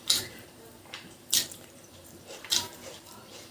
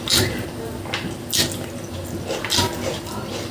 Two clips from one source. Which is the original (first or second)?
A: second